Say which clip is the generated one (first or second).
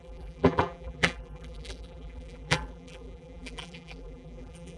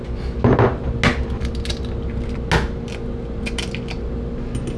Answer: first